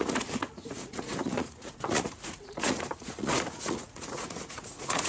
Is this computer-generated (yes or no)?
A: yes